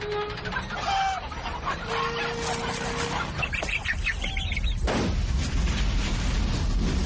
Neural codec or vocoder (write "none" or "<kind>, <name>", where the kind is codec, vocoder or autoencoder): none